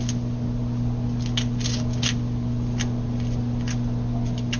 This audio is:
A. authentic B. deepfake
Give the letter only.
A